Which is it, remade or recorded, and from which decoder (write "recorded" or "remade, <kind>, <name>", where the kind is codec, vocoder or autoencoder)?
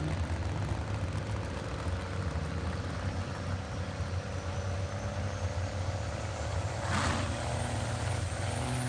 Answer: recorded